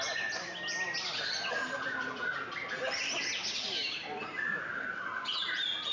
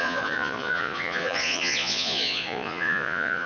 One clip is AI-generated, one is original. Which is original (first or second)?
first